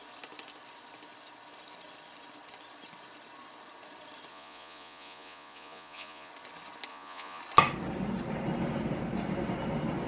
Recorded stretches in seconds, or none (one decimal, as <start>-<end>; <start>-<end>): 0.0-4.3; 6.3-6.9; 7.4-10.1